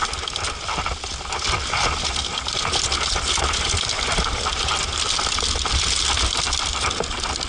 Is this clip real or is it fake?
real